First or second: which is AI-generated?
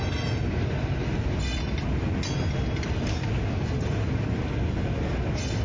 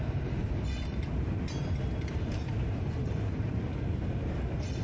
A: second